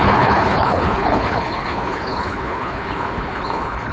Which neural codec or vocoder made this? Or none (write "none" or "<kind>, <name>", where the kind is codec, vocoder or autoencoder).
codec, HILCodec